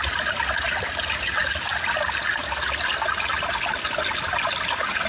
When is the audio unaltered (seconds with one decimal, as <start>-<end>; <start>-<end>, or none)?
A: 0.0-5.1